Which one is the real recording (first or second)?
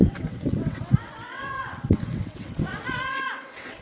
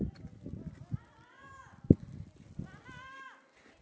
second